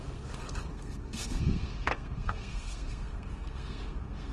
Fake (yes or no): yes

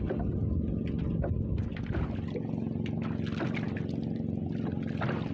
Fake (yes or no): no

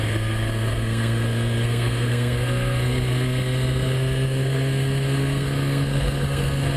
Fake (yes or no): yes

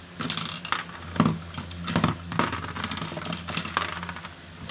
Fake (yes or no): no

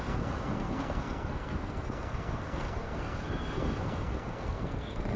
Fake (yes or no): yes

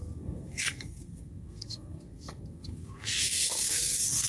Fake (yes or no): yes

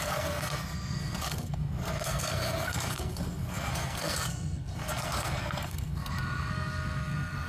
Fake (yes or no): yes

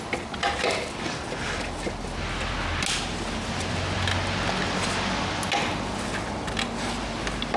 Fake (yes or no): no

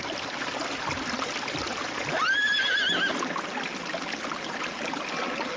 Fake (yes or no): no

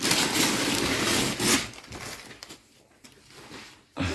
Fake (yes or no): no